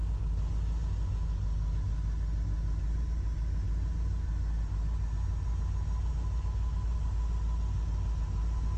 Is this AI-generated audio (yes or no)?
no